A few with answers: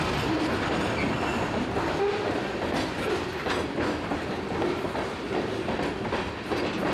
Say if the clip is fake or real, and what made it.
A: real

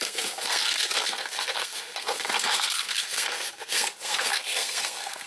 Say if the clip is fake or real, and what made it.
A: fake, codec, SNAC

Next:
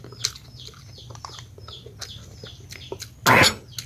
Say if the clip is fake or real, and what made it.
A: real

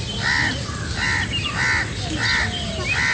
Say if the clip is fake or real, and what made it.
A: real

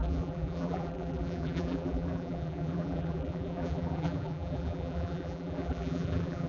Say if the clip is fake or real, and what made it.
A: fake, vocoder, BigVGAN v2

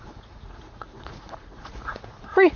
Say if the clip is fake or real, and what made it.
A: fake, vocoder, Vocos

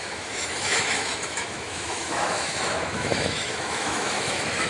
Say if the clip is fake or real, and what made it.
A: fake, autoencoder, DAC-VAE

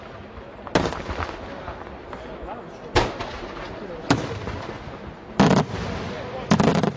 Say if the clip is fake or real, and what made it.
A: real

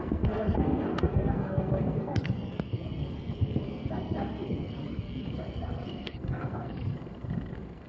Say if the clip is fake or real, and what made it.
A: fake, codec, SNAC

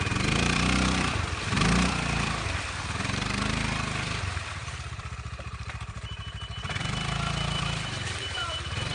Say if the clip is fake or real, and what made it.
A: fake, vocoder, BigVGAN v2